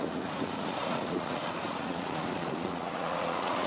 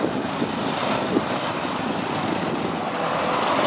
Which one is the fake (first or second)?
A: first